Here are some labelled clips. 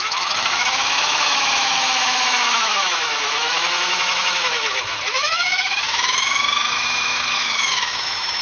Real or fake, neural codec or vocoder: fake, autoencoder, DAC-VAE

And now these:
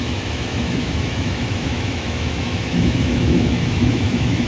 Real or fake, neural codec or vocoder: fake, autoencoder, DAC-VAE